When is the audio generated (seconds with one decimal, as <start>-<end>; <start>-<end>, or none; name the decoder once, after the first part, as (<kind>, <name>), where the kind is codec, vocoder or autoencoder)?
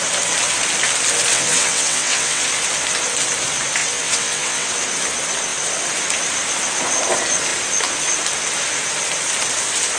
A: 1.3-2.4 (vocoder, WaveNeXt); 3.8-4.7